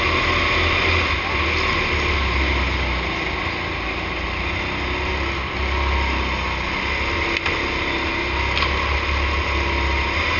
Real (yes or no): yes